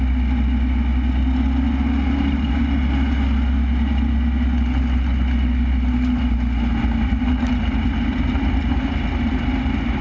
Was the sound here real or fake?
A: real